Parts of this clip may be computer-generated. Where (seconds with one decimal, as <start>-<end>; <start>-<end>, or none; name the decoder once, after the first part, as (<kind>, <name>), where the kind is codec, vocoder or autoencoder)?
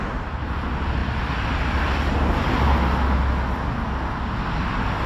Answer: none